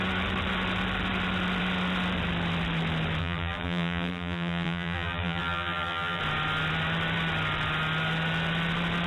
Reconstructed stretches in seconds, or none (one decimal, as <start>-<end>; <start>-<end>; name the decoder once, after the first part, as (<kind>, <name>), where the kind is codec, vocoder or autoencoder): 3.2-6.2 (vocoder, BigVGAN v2)